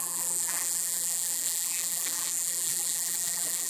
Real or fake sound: fake